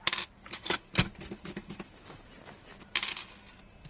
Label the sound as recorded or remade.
recorded